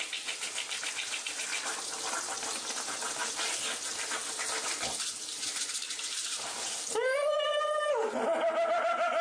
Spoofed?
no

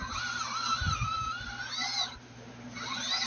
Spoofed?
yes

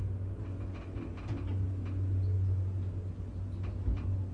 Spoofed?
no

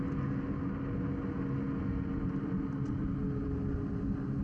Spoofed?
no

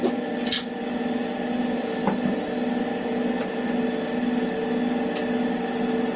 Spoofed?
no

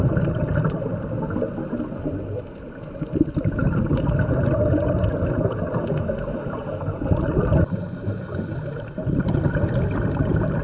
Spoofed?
no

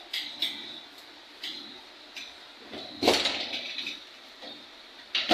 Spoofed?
yes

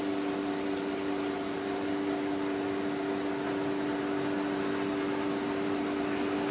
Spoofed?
no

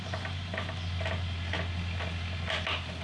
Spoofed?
no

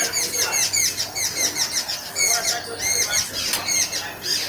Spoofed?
no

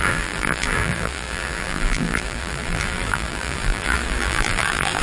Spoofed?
yes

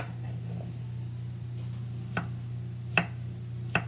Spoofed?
no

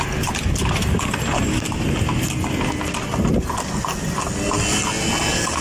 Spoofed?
no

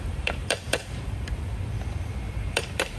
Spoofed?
yes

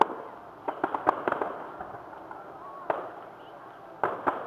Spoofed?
no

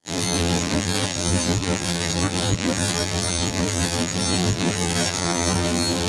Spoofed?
yes